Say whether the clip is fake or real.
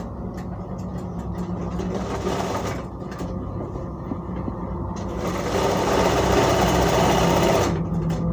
real